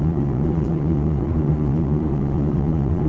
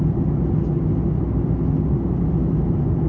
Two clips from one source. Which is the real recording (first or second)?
second